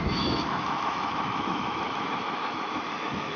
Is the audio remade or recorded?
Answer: remade